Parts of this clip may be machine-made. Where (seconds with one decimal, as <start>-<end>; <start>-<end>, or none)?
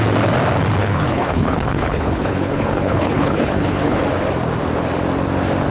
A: 0.8-4.0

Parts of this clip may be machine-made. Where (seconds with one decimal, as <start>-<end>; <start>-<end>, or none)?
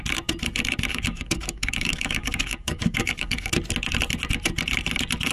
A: 0.9-3.5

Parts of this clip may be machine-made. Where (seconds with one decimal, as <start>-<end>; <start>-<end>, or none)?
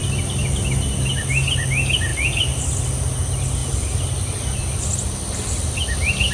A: none